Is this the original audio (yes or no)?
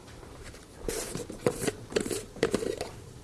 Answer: no